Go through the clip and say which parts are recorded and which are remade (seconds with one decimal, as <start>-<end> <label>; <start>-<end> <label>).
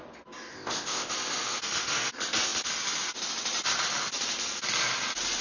0.0-0.5 recorded; 0.5-1.1 remade; 1.1-5.4 recorded